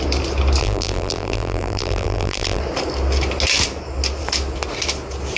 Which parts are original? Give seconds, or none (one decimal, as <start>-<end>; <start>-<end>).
0.0-0.6; 2.6-5.4